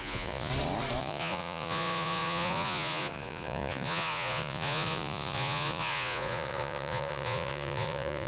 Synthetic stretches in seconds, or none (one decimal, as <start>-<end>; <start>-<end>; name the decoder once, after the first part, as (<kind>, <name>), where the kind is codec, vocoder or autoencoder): 0.0-0.5 (vocoder, Vocos); 1.0-8.3